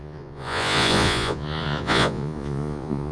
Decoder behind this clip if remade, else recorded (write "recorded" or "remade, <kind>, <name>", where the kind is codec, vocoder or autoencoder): remade, vocoder, Vocos